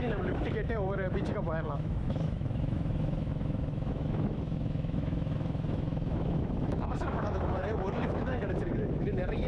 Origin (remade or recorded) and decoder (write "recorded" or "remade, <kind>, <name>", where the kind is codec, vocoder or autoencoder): remade, autoencoder, DAC-VAE